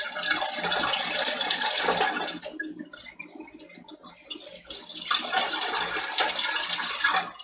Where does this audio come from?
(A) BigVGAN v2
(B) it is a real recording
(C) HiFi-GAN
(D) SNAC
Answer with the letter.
B